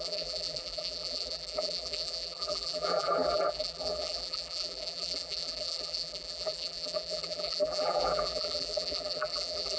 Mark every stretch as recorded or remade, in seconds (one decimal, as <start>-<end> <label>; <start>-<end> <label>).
0.0-9.8 remade